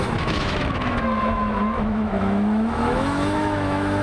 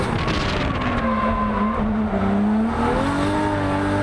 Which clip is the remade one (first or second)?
first